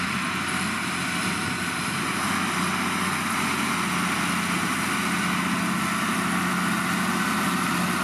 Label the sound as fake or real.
real